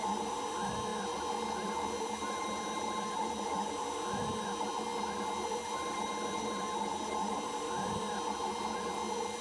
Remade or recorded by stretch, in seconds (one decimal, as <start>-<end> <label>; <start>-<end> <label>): 0.0-9.4 recorded